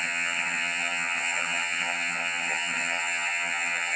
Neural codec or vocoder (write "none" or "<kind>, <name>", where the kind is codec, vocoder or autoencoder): vocoder, HiFi-GAN